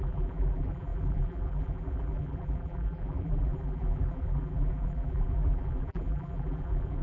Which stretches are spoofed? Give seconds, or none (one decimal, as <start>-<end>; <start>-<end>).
0.0-7.0